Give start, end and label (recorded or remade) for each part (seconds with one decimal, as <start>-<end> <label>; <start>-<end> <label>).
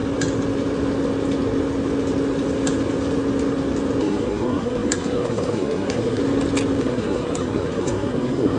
0.0-4.0 recorded; 4.0-6.2 remade; 6.2-6.8 recorded; 6.8-8.6 remade